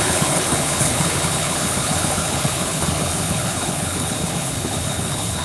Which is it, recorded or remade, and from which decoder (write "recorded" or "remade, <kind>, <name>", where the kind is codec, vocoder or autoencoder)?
remade, codec, HILCodec